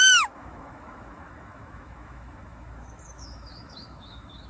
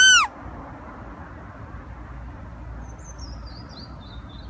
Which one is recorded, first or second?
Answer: second